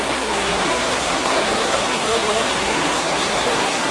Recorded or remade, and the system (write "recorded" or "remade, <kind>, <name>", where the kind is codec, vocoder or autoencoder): remade, codec, SNAC